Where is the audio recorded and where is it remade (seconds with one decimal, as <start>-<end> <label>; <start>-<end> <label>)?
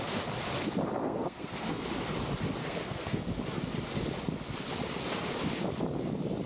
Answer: 0.0-1.0 recorded; 1.0-1.8 remade; 1.8-2.6 recorded; 2.6-3.2 remade; 3.2-6.5 recorded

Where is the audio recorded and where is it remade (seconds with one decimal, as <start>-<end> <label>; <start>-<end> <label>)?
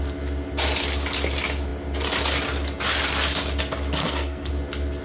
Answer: 0.0-4.0 recorded; 4.0-4.5 remade; 4.5-5.0 recorded